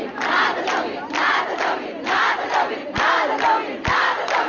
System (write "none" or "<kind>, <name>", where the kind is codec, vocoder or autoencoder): none